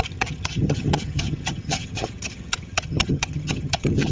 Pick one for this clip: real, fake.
fake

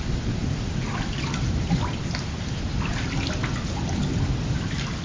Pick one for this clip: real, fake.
real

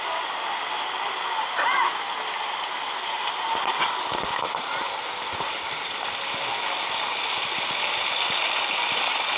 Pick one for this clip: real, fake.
real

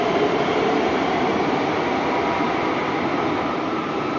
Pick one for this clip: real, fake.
real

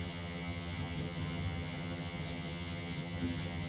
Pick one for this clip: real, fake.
fake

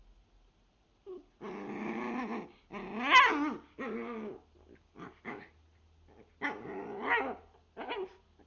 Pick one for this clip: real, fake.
real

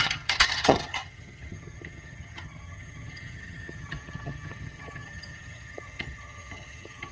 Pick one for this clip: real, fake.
fake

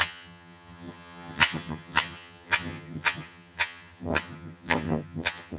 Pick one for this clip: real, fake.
fake